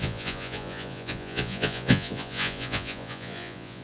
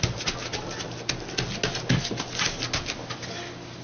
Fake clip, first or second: first